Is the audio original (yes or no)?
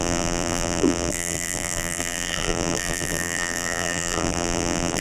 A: no